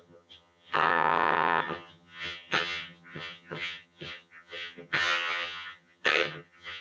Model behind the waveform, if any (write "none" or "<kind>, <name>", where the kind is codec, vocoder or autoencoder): vocoder, HiFi-GAN